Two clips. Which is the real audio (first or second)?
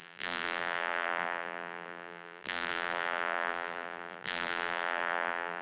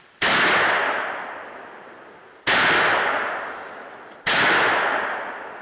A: second